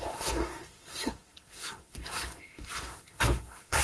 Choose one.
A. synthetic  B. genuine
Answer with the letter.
A